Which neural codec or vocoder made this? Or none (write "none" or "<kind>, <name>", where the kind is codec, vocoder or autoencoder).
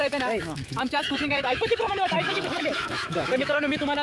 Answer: autoencoder, DAC-VAE